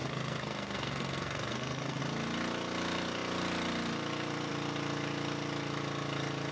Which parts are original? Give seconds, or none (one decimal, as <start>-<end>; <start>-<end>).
2.0-6.5